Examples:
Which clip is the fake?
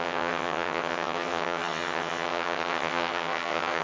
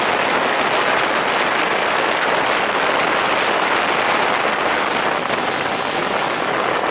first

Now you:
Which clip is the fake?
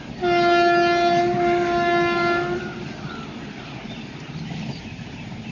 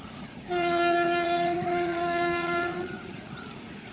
second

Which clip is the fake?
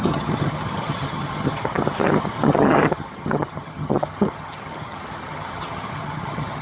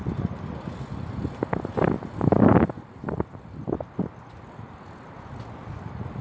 first